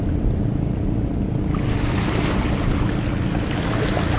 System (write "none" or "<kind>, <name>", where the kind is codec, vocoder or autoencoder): none